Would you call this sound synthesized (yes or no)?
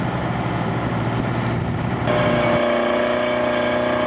no